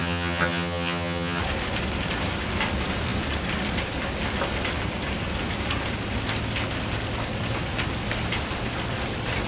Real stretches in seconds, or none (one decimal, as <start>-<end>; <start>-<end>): 1.4-9.5